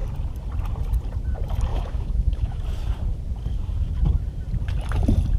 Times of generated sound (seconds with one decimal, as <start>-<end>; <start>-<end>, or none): 1.7-2.6